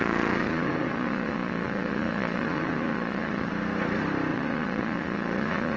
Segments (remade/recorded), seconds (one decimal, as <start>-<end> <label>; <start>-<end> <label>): 0.0-3.5 remade; 3.5-4.3 recorded; 4.3-5.8 remade